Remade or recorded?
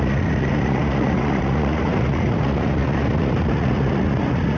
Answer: remade